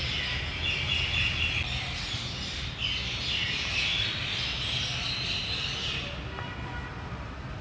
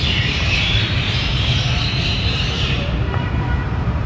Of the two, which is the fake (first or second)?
second